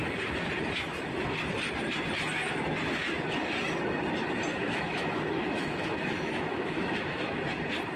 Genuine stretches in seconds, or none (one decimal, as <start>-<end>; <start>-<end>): 0.0-4.5; 7.4-8.0